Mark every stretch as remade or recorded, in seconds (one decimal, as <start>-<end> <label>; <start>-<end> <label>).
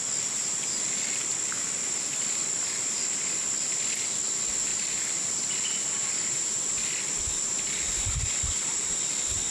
0.0-9.5 recorded